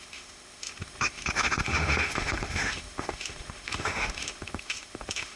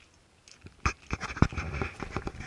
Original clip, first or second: second